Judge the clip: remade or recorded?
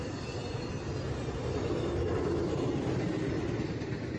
recorded